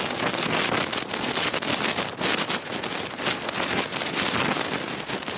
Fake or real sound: real